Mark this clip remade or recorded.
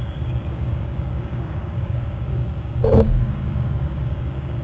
remade